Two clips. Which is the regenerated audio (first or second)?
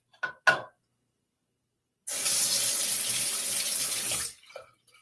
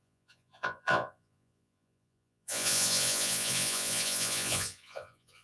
second